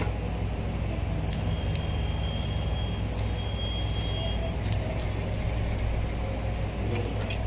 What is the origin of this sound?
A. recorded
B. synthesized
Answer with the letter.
A